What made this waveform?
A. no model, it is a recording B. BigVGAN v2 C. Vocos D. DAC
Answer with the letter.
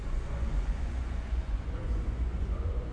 C